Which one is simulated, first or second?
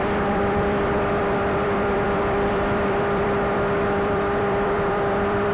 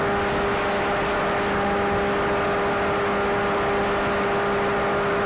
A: first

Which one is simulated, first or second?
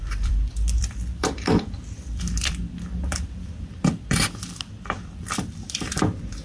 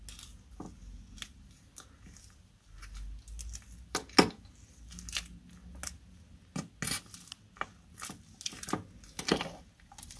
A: first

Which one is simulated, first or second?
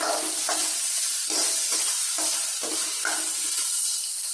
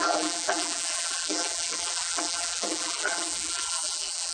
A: second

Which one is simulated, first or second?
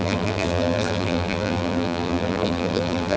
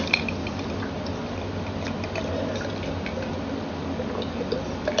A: first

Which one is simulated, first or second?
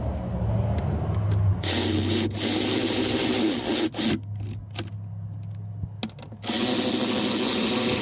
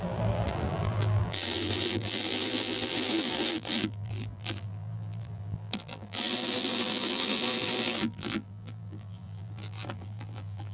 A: second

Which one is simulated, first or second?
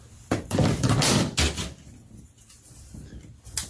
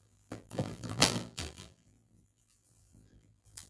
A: second